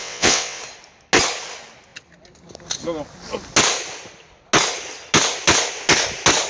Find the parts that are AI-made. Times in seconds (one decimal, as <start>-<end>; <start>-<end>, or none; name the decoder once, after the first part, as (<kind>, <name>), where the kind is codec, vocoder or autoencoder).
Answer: 0.0-0.6 (vocoder, WaveNeXt)